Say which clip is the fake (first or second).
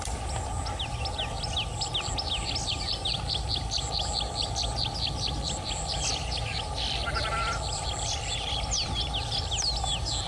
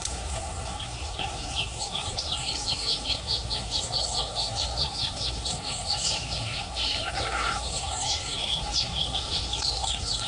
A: second